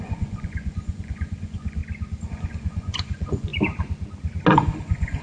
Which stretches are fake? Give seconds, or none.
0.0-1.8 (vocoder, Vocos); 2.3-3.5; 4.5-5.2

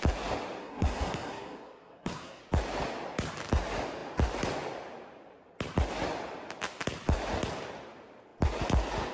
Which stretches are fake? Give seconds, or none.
0.6-2.4 (codec, SNAC)

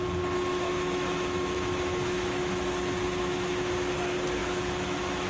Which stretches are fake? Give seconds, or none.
0.5-3.7 (autoencoder, DAC-VAE); 4.4-5.3

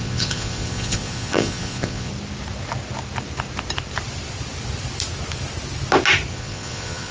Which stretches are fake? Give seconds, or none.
0.0-2.1 (vocoder, Vocos); 6.3-7.1